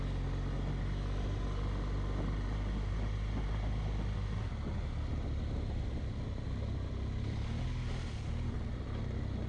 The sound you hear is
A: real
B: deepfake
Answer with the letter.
A